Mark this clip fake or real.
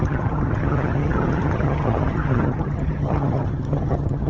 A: fake